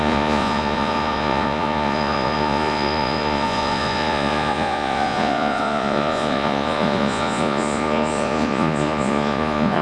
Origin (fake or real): fake